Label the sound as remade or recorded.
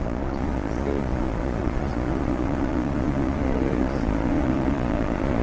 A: remade